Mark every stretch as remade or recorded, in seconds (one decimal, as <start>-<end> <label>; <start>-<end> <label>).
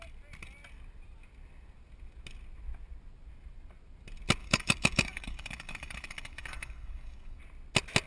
0.0-4.4 recorded; 4.4-7.4 remade; 7.4-8.1 recorded